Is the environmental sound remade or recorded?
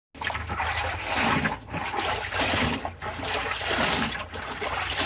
recorded